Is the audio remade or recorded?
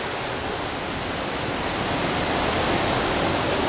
recorded